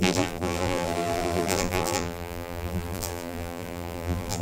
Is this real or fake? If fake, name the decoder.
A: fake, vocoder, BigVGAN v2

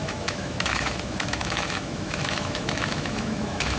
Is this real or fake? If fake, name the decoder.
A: fake, autoencoder, DAC-VAE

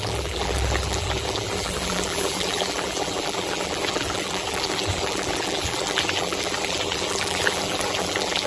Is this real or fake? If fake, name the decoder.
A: fake, vocoder, BigVGAN v2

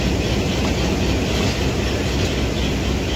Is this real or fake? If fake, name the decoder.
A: real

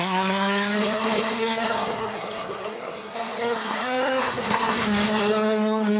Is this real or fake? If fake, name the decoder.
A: fake, codec, SNAC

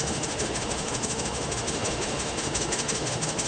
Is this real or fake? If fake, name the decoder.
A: fake, autoencoder, DAC-VAE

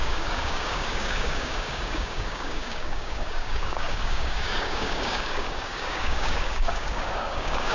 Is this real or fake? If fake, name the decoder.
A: fake, codec, DAC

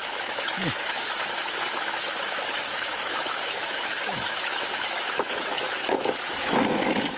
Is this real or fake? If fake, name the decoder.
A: fake, autoencoder, DAC-VAE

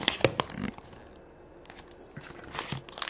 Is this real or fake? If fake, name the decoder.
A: real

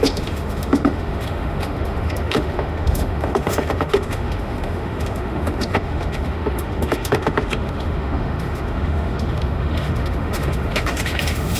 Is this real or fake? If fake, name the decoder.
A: fake, autoencoder, DAC-VAE